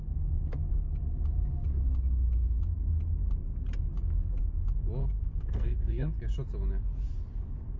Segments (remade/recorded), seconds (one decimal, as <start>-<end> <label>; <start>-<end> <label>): 0.0-5.0 recorded; 5.0-6.2 remade; 6.2-7.8 recorded